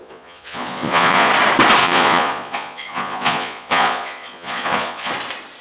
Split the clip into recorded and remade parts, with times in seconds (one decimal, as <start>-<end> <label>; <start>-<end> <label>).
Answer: 0.0-1.3 remade; 1.3-1.8 recorded; 1.8-5.1 remade; 5.1-5.6 recorded